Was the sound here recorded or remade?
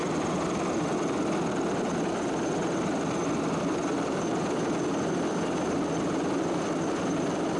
recorded